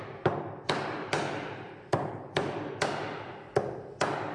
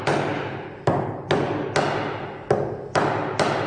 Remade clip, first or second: first